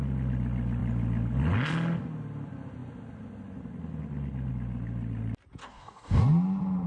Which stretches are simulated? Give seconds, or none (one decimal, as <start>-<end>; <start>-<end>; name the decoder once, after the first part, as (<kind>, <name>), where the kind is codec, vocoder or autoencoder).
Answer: 5.6-6.2 (codec, DAC)

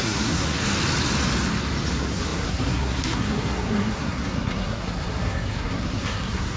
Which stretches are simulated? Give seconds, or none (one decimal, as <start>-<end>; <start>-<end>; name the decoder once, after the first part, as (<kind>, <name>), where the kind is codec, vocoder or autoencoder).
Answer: 0.0-0.6 (codec, SNAC); 1.9-6.6

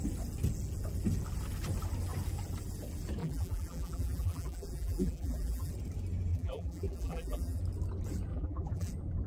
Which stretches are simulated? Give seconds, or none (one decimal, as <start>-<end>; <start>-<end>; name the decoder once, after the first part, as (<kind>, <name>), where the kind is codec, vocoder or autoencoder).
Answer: 3.2-5.7 (vocoder, BigVGAN v2); 6.3-7.6; 8.3-8.9

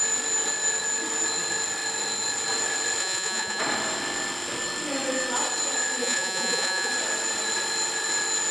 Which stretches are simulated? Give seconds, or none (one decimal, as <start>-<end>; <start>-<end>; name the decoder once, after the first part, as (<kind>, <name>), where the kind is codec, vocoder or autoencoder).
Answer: 3.0-3.6 (vocoder, Vocos); 6.0-6.9

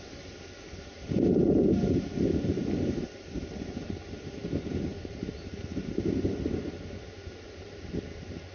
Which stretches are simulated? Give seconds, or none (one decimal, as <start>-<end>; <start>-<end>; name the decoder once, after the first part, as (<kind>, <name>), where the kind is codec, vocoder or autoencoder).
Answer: 0.0-8.5 (vocoder, BigVGAN v2)

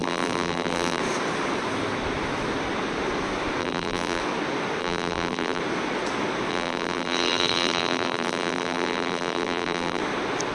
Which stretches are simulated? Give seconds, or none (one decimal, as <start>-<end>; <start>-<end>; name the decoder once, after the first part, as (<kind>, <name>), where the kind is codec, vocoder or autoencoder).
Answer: 0.0-1.0 (vocoder, BigVGAN v2); 3.6-4.2; 4.8-5.6; 6.5-10.0